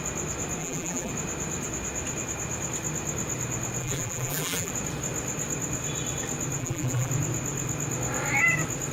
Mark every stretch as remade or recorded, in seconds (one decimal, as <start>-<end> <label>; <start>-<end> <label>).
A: 0.0-0.6 recorded; 0.6-1.1 remade; 1.1-3.8 recorded; 3.8-4.7 remade; 4.7-6.6 recorded; 6.6-7.1 remade; 7.1-8.9 recorded